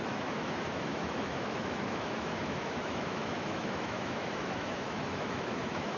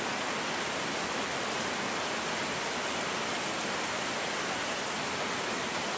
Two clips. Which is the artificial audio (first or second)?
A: first